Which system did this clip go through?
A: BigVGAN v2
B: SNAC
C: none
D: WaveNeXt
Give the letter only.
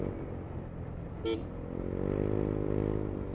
C